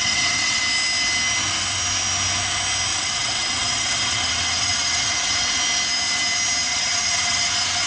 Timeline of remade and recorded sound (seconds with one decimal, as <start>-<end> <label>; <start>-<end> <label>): 0.0-0.6 remade; 0.6-2.9 recorded; 2.9-5.6 remade; 5.6-6.7 recorded; 6.7-7.5 remade; 7.5-7.9 recorded